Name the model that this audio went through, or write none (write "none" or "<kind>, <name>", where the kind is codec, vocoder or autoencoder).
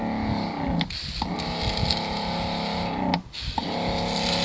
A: none